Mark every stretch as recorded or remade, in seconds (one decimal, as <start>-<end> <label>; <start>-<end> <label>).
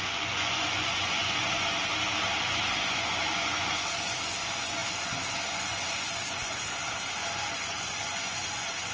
0.0-1.9 remade; 1.9-2.4 recorded; 2.4-8.9 remade